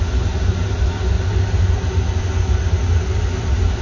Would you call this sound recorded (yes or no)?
yes